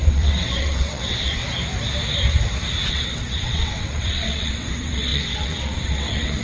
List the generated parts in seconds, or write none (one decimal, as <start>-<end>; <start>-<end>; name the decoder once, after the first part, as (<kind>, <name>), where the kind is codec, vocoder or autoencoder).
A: 0.0-1.4 (vocoder, WaveNeXt); 2.9-6.4